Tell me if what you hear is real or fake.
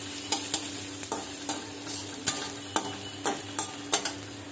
real